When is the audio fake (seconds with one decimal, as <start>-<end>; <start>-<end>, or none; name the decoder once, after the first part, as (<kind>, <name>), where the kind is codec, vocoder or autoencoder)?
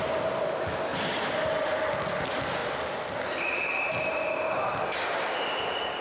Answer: 0.9-1.6 (vocoder, BigVGAN v2); 2.6-6.0